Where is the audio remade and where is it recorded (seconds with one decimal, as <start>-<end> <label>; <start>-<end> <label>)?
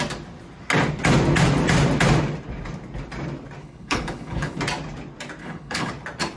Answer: 0.0-3.6 recorded; 3.6-4.6 remade; 4.6-5.4 recorded; 5.4-5.9 remade; 5.9-6.4 recorded